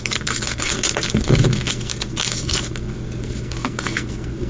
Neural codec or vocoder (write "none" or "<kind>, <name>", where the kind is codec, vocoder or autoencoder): codec, SNAC